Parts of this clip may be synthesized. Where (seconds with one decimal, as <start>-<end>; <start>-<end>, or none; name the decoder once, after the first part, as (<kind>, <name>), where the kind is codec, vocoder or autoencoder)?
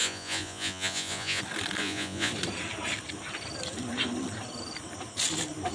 0.0-1.4 (vocoder, Vocos); 1.8-2.3